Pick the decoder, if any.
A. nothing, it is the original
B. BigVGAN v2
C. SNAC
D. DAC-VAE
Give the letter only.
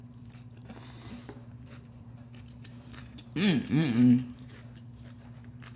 B